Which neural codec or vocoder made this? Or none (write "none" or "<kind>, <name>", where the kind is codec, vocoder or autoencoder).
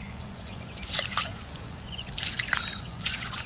vocoder, Vocos